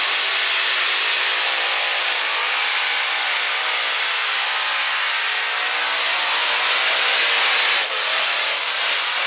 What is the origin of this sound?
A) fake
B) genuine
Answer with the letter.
A